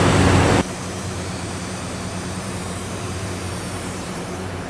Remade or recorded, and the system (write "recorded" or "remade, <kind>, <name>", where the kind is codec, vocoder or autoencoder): remade, vocoder, BigVGAN v2